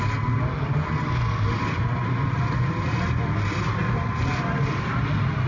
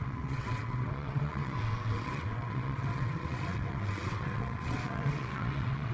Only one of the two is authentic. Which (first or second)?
first